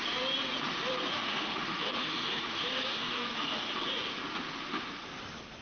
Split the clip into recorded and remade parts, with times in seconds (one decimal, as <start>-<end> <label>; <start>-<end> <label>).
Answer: 0.0-1.1 recorded; 1.1-3.7 remade; 3.7-5.6 recorded